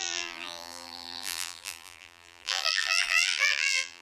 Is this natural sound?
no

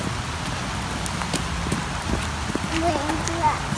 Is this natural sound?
yes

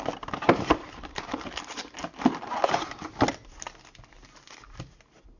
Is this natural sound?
yes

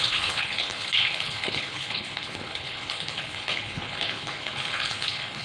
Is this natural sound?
no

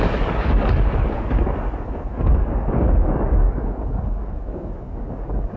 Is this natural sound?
no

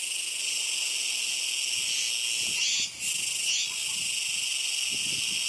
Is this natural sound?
yes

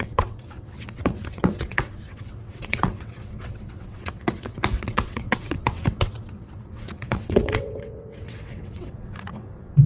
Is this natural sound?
no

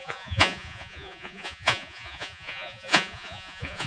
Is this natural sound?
no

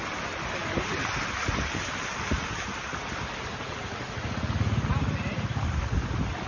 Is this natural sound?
yes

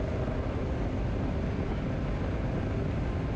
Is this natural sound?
yes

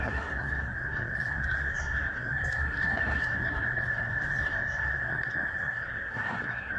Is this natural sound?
no